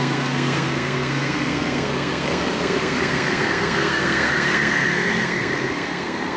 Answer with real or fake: fake